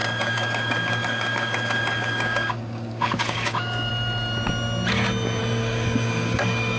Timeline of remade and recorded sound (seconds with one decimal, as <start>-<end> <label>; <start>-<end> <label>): 0.0-3.9 remade; 3.9-5.4 recorded; 5.4-6.8 remade